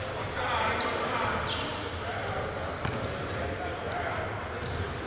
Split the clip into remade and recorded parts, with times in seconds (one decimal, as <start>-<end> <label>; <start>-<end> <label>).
0.0-5.1 recorded